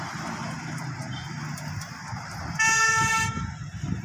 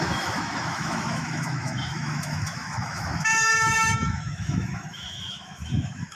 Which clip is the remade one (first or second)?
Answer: second